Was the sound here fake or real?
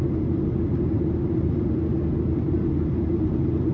real